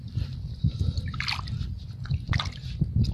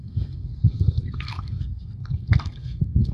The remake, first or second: second